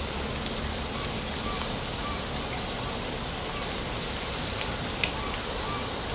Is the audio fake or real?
real